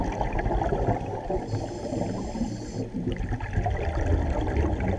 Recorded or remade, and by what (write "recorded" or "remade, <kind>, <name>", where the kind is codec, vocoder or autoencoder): recorded